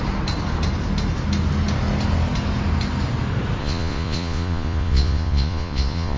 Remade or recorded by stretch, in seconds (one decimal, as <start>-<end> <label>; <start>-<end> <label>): 0.0-3.6 recorded; 3.6-6.2 remade